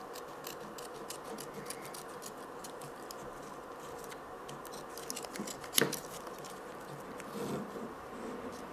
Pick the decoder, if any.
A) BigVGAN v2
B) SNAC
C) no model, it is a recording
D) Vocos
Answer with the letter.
C